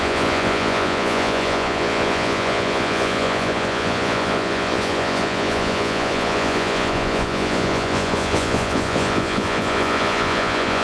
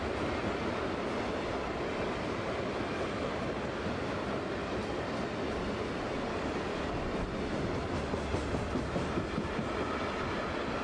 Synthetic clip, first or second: first